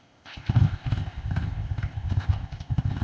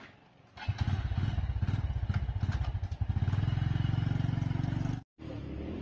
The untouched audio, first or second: second